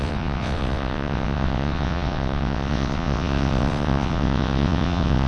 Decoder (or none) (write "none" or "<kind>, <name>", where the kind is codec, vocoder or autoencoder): vocoder, WaveNeXt